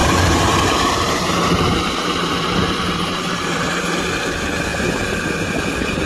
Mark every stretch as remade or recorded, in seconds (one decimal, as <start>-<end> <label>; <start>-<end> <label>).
0.0-3.7 remade; 3.7-6.1 recorded